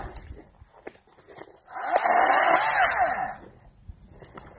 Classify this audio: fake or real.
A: real